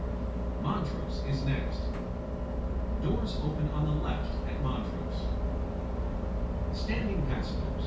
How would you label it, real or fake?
real